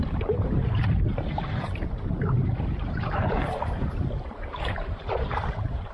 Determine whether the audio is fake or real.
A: fake